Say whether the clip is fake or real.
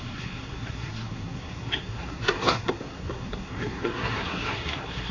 fake